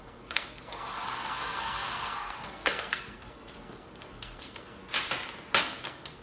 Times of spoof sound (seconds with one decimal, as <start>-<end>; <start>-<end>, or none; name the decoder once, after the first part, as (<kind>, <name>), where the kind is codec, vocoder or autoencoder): 0.0-4.8 (codec, SNAC); 5.6-6.2

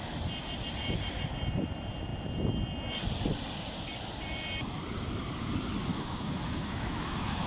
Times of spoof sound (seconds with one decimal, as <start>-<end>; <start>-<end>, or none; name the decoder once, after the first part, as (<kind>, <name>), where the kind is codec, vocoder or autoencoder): 5.9-7.5 (autoencoder, DAC-VAE)

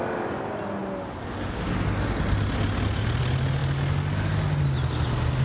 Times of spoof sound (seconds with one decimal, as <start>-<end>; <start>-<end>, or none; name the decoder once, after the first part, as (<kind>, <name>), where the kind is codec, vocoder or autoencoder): none

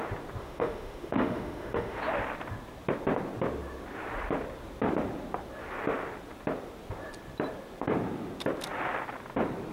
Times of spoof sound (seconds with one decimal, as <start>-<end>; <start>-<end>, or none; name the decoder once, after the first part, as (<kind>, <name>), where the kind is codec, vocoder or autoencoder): 0.4-2.0 (autoencoder, DAC-VAE)

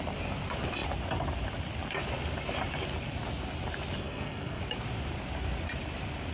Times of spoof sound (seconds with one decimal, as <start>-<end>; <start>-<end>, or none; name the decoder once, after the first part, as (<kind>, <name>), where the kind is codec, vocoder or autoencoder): 4.0-4.6 (codec, SNAC)

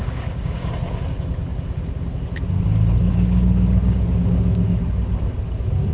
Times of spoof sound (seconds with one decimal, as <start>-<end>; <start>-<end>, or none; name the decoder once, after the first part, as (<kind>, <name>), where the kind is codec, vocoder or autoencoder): 0.0-0.7 (codec, DAC); 3.1-4.8

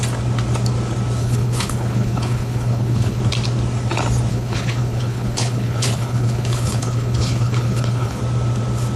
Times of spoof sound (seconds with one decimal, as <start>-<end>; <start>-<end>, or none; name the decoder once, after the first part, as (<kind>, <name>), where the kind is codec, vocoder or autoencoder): 1.2-3.2 (codec, HILCodec); 4.3-8.2